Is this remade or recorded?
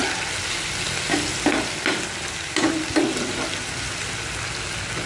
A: recorded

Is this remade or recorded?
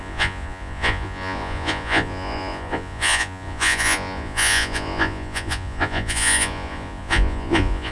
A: remade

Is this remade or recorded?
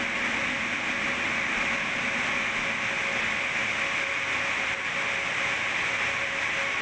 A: recorded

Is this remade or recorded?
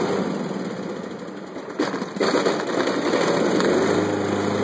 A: recorded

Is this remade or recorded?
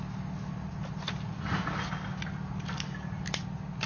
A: recorded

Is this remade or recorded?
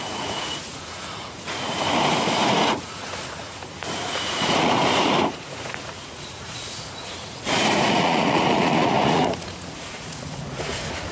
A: remade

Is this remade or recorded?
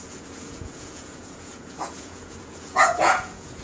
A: remade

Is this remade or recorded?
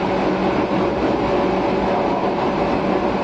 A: recorded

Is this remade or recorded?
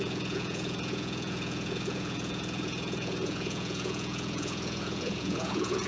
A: remade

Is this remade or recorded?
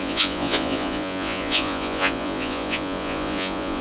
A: remade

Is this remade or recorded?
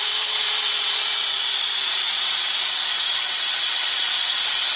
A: remade